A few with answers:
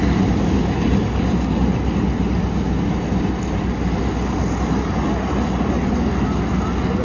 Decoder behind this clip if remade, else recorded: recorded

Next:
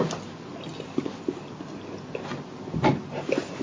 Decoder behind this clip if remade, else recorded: recorded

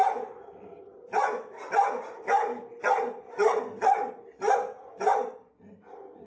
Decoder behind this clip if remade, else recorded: recorded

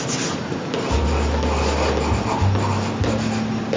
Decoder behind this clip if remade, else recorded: recorded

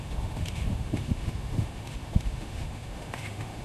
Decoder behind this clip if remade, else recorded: remade, autoencoder, DAC-VAE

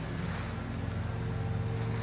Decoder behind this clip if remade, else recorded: recorded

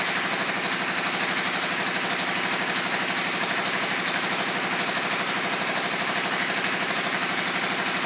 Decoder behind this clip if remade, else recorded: recorded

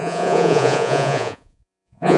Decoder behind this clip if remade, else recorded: remade, vocoder, Vocos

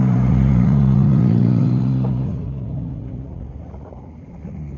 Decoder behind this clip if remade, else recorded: remade, vocoder, Vocos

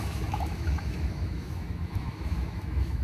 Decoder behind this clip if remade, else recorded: remade, autoencoder, DAC-VAE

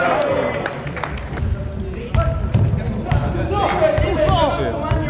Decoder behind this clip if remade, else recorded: recorded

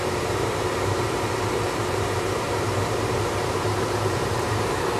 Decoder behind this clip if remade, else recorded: remade, vocoder, BigVGAN v2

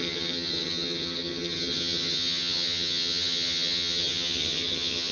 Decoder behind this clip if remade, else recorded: remade, vocoder, HiFi-GAN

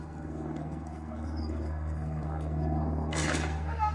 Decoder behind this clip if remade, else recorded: remade, codec, SNAC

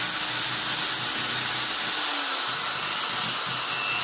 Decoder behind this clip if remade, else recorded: recorded